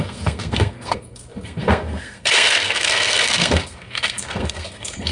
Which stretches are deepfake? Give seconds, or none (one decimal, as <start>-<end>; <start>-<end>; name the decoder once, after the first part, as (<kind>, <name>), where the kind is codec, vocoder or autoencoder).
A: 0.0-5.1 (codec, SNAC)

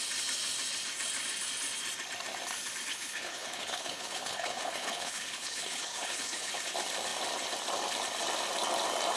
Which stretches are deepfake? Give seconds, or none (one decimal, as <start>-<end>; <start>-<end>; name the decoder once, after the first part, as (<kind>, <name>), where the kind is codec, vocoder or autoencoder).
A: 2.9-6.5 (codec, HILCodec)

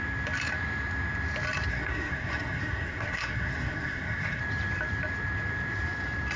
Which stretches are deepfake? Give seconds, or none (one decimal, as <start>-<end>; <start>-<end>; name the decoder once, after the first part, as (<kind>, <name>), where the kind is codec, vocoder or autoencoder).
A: 1.7-4.4 (codec, SNAC)

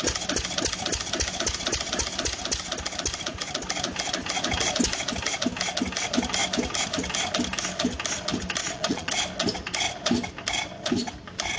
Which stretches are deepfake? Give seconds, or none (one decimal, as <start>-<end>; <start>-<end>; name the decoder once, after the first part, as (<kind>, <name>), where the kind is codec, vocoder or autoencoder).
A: 8.6-9.1 (vocoder, Vocos)